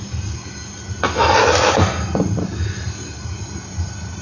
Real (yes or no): yes